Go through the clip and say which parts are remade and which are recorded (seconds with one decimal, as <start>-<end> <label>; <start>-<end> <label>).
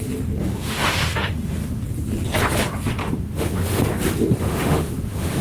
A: 0.0-0.4 recorded; 0.4-1.8 remade; 1.8-3.0 recorded; 3.0-3.8 remade; 3.8-4.4 recorded; 4.4-5.4 remade